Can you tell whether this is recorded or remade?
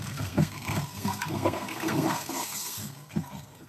remade